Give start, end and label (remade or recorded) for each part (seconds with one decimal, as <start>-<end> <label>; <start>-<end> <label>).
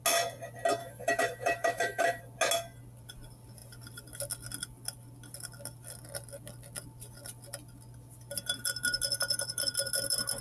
0.0-0.8 recorded; 0.8-2.2 remade; 2.2-10.4 recorded